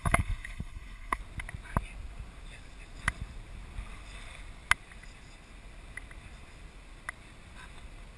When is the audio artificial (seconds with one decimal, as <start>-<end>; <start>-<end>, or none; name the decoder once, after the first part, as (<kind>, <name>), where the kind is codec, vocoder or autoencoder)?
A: 0.0-1.2 (codec, HILCodec)